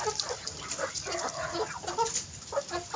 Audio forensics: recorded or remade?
recorded